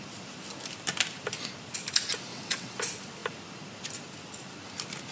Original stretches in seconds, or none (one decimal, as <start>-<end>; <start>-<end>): 0.0-2.3; 2.8-5.1